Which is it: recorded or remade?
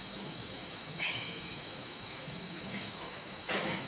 remade